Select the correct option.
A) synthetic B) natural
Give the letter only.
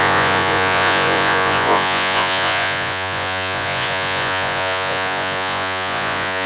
A